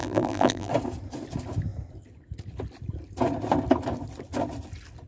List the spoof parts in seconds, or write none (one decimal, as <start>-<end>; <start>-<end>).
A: 0.0-0.7